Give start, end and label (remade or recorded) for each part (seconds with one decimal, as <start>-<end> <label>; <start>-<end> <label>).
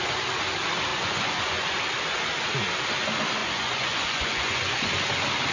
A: 0.0-0.9 recorded; 0.9-1.8 remade; 1.8-3.4 recorded; 3.4-4.9 remade; 4.9-5.5 recorded